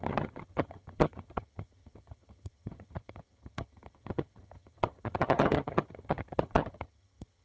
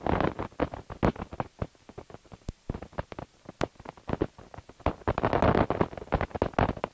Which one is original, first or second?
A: second